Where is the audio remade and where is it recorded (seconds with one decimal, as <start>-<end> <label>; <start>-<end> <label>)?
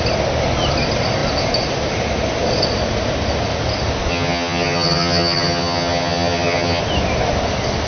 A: 0.0-4.1 recorded; 4.1-6.8 remade; 6.8-7.9 recorded